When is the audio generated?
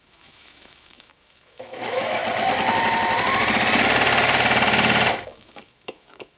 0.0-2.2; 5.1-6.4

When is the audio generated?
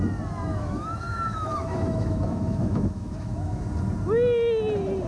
0.5-3.6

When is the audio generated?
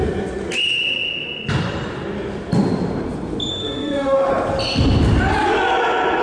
3.5-4.3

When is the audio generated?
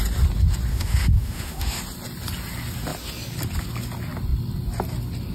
0.7-1.8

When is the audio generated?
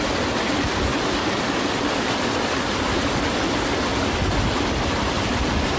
none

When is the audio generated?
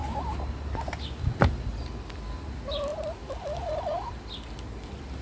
none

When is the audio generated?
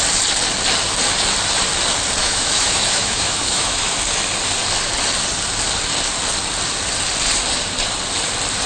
2.2-3.9